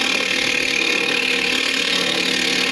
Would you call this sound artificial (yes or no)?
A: yes